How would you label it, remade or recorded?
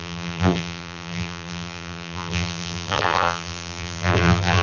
remade